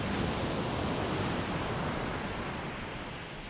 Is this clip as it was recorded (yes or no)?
yes